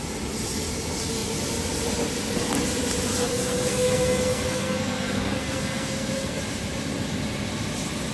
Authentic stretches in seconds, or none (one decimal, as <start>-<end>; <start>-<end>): 0.0-3.3; 6.4-8.1